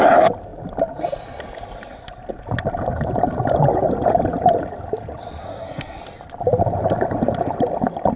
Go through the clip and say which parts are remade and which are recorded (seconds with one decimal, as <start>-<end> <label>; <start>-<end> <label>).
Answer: 0.0-5.4 recorded; 5.4-6.0 remade; 6.0-8.2 recorded